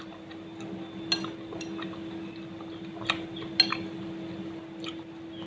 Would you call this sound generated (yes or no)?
no